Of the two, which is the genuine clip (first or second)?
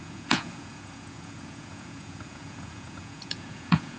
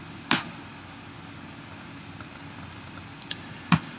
second